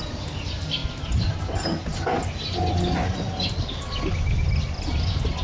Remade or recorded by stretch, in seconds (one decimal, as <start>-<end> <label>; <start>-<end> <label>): 0.0-5.4 recorded

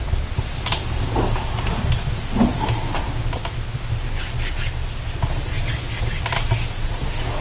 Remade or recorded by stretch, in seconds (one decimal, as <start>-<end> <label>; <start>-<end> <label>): 0.0-7.4 recorded

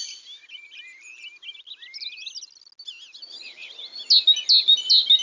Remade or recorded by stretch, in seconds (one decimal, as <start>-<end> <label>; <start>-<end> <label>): 0.0-5.2 recorded